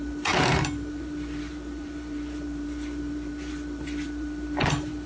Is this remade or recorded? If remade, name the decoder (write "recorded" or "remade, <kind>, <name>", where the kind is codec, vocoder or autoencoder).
remade, vocoder, BigVGAN v2